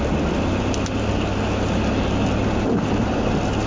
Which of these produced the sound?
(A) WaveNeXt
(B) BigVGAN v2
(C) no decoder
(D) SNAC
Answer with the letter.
C